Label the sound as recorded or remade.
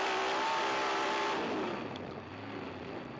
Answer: remade